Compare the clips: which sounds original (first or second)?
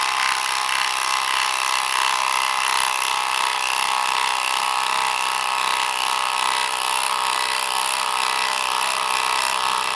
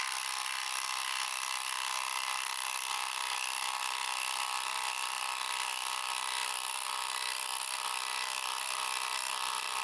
first